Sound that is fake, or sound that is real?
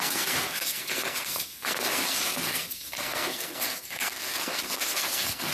fake